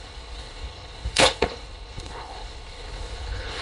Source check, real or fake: fake